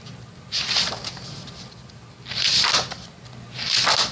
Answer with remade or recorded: recorded